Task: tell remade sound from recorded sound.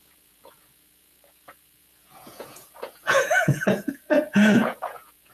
remade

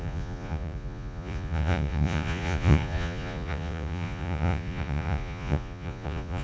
remade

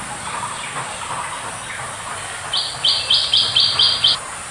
recorded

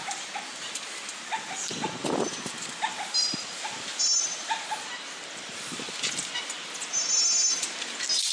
recorded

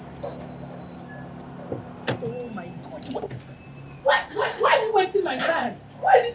recorded